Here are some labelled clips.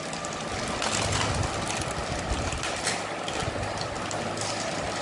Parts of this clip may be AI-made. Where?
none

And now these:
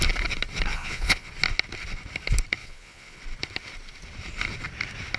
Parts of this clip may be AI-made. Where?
0.7-1.3; 2.6-3.2

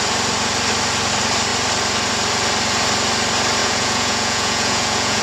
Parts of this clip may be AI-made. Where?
3.6-5.2

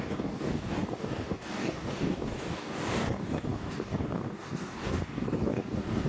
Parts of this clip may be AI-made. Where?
0.0-6.1

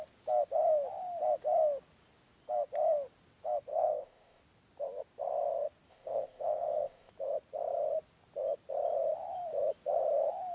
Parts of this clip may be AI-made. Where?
3.7-4.4; 5.9-7.1

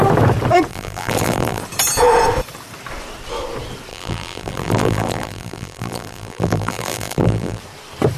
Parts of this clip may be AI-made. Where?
0.7-1.6; 3.9-7.6

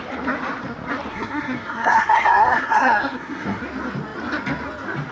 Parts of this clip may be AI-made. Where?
1.1-3.6

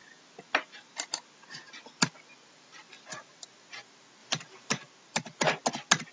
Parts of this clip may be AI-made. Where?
none